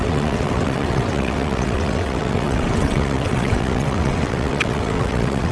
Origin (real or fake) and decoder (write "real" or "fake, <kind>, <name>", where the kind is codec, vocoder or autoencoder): fake, vocoder, WaveNeXt